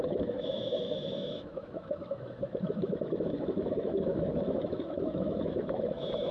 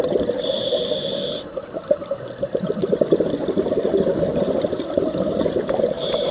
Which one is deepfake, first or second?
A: first